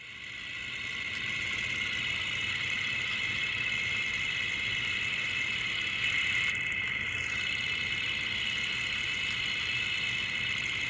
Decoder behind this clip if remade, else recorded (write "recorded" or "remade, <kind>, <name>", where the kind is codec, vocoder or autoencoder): recorded